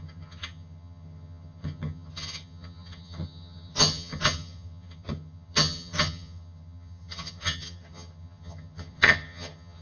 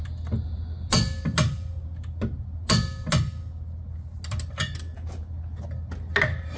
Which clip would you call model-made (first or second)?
first